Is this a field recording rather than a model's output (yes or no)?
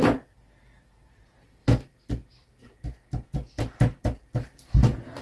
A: yes